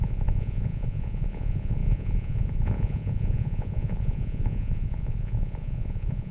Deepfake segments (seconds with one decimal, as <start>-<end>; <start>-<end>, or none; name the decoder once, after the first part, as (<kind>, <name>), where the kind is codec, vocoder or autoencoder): 0.0-6.3 (vocoder, Vocos)